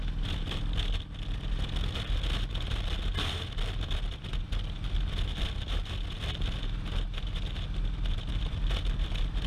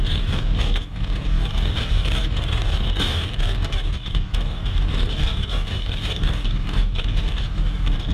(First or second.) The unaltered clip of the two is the first